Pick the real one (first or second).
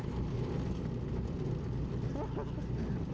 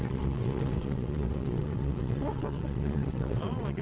first